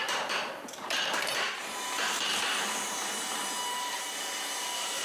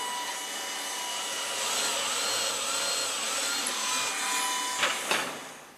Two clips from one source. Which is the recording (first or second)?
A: second